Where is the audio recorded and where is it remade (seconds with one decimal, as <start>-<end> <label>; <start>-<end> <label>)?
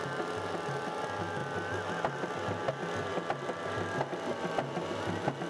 0.0-5.5 recorded